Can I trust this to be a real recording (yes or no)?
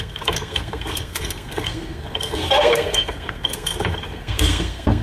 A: no